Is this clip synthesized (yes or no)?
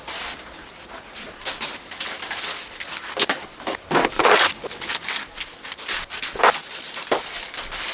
no